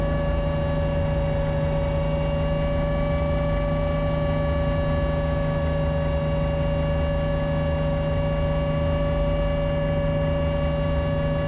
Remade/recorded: recorded